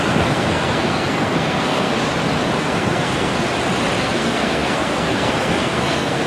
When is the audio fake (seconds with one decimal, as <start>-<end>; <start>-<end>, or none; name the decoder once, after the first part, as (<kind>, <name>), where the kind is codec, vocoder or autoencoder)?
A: 0.0-1.9 (codec, SNAC); 2.6-3.3; 4.0-6.3